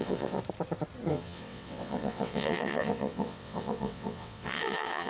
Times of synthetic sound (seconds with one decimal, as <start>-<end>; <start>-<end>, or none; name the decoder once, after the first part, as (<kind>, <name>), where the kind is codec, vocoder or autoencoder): 0.0-0.4 (vocoder, WaveNeXt); 1.1-5.1

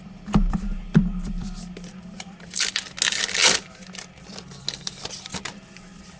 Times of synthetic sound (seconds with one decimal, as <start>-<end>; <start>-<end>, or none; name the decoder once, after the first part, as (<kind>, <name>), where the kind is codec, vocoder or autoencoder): none

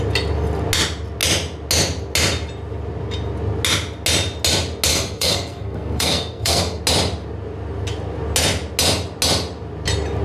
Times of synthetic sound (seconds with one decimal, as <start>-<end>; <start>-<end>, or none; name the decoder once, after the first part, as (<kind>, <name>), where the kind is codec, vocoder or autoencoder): 4.9-6.8 (codec, SNAC)

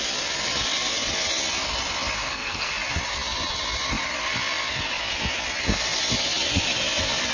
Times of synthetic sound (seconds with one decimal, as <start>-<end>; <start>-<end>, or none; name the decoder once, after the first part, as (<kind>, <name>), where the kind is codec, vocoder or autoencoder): 2.2-2.7 (codec, SNAC)

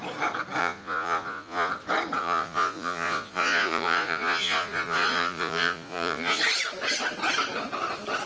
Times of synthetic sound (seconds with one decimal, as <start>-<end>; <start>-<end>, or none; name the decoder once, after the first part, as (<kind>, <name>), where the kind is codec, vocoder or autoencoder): 0.6-1.7 (vocoder, Vocos); 2.2-6.4

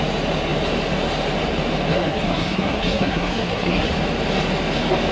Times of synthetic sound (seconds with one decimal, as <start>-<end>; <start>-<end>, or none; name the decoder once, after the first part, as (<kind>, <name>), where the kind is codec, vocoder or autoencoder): 1.9-3.9 (codec, SNAC)

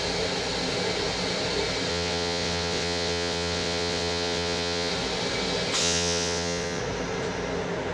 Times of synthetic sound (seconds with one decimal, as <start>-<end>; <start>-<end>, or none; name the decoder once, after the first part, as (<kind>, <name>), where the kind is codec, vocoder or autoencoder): 1.9-4.9 (vocoder, WaveNeXt); 5.8-6.8

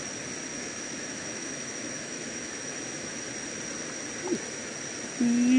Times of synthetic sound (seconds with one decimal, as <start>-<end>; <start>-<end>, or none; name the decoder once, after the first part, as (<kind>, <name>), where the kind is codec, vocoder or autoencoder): 0.5-3.2 (autoencoder, DAC-VAE)